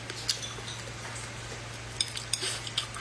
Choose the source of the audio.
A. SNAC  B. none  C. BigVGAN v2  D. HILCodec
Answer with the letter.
B